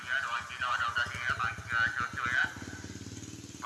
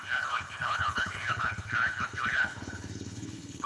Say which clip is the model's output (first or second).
second